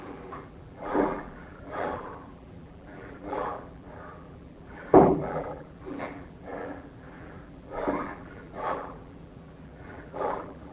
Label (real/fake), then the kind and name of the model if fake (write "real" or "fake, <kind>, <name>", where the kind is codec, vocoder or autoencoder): fake, vocoder, BigVGAN v2